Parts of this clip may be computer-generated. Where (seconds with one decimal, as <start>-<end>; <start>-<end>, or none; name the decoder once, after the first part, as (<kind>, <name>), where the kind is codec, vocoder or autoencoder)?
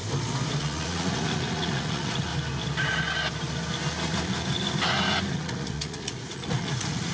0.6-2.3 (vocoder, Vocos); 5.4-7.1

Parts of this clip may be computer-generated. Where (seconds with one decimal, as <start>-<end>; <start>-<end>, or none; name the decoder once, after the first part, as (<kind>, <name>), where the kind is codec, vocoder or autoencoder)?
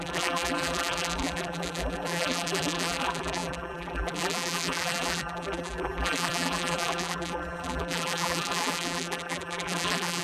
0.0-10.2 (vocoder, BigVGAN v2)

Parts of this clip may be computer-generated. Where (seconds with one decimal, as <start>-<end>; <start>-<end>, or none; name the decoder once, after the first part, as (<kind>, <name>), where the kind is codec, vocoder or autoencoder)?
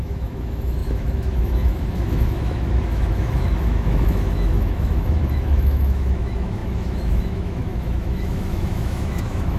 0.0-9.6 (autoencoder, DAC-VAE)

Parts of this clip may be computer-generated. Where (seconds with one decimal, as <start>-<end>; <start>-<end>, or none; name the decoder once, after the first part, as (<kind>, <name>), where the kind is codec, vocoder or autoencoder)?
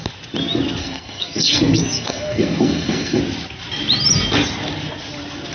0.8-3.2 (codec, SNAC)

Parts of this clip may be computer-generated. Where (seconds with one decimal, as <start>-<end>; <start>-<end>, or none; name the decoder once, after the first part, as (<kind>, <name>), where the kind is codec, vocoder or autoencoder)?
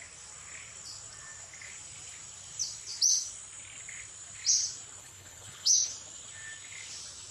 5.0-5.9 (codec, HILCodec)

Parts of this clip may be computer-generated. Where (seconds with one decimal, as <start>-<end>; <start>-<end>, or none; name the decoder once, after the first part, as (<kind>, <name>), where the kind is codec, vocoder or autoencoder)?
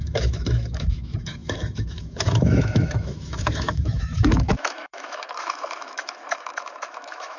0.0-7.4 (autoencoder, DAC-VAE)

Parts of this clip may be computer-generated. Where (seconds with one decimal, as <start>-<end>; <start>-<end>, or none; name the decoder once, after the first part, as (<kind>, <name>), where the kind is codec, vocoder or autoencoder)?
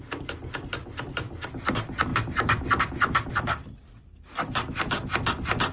none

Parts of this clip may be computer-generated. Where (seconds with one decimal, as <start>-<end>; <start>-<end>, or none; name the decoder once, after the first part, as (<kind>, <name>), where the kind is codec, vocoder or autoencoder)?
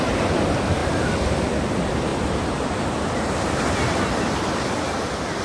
0.8-1.4 (vocoder, BigVGAN v2)